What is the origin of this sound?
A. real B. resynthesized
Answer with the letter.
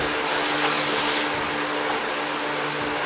A